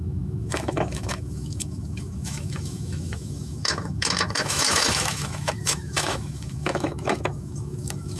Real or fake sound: fake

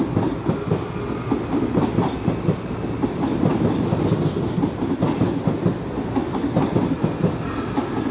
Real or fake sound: real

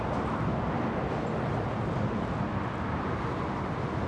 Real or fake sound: real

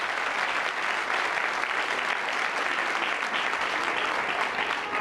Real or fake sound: real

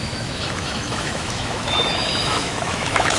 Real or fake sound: fake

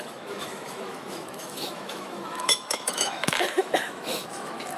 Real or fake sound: fake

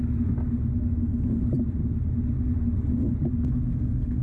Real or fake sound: real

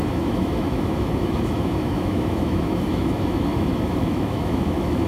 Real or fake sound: fake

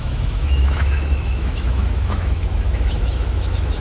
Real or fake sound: fake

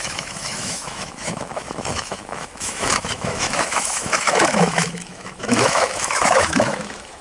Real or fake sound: fake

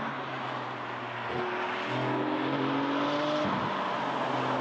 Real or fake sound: real